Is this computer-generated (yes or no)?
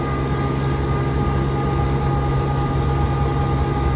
no